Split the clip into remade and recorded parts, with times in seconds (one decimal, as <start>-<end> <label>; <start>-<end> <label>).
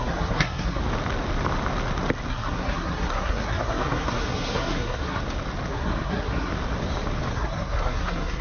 0.0-0.8 remade; 0.8-2.3 recorded; 2.3-5.2 remade; 5.2-5.7 recorded; 5.7-6.5 remade; 6.5-7.3 recorded; 7.3-8.4 remade